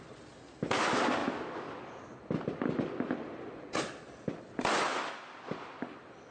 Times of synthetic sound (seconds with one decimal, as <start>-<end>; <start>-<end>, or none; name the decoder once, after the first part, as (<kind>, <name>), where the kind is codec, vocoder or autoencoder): none